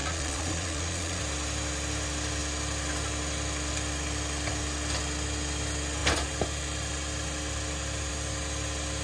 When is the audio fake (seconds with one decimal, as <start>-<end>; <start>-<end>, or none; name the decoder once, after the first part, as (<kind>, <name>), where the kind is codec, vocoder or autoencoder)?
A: 0.0-1.2 (vocoder, Vocos)